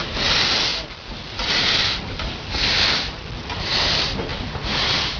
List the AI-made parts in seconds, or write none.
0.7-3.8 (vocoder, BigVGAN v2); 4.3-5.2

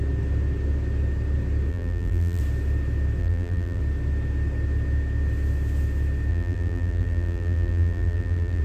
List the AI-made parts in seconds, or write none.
1.7-2.4 (vocoder, BigVGAN v2); 3.2-3.8; 6.3-8.6

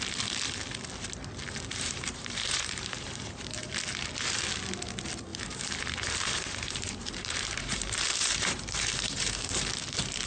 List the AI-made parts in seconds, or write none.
1.7-3.7 (vocoder, BigVGAN v2); 5.3-9.6

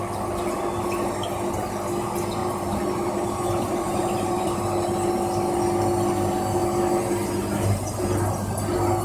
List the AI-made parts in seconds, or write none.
2.4-4.6 (vocoder, BigVGAN v2)

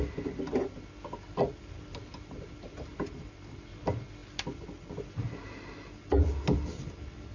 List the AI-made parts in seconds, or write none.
4.2-5.1 (vocoder, BigVGAN v2)

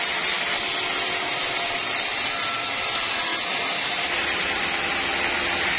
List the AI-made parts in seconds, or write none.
none

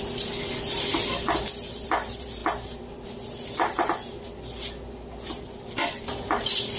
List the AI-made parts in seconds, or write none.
0.0-2.4 (vocoder, BigVGAN v2); 5.4-6.8

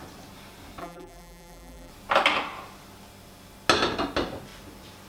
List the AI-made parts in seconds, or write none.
0.8-1.9 (vocoder, BigVGAN v2)